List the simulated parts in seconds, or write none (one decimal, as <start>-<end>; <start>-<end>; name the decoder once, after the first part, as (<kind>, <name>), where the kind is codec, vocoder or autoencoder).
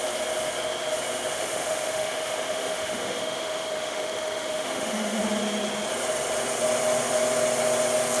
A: 1.3-5.2 (autoencoder, DAC-VAE)